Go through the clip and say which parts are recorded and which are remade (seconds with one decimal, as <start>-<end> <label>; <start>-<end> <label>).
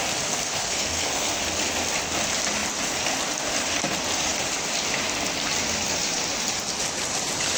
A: 0.0-0.6 recorded; 0.6-1.4 remade; 1.4-7.6 recorded